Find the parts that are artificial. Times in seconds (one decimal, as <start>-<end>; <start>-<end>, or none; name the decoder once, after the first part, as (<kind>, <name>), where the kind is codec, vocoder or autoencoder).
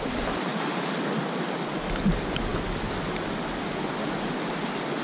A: none